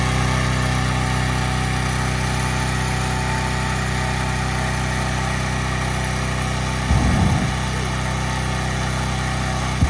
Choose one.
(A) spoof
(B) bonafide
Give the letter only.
B